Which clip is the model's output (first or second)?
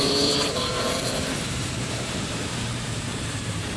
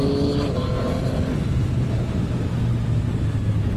first